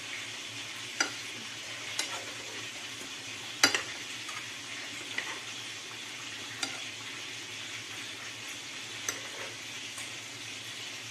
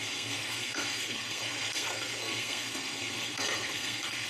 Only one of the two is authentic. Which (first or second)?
first